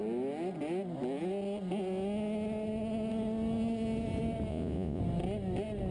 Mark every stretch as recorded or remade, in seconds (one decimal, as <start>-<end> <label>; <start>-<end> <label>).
0.0-4.5 recorded; 4.5-5.0 remade; 5.0-5.9 recorded